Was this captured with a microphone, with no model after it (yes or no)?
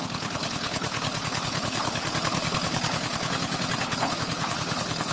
no